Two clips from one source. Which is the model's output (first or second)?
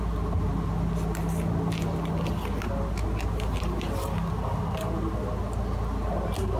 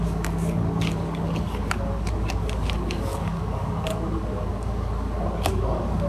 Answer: second